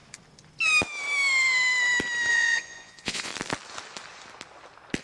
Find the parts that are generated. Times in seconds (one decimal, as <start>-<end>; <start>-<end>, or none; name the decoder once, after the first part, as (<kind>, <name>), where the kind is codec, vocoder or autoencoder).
2.3-3.3 (vocoder, Vocos)